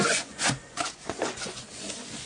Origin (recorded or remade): remade